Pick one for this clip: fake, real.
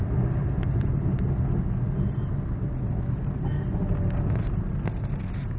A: real